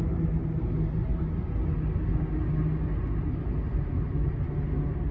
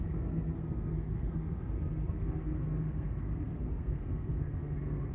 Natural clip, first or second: first